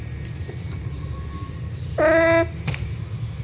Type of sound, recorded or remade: recorded